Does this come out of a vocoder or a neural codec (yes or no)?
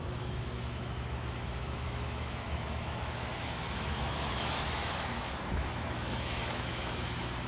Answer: yes